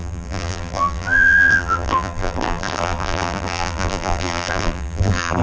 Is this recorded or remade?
remade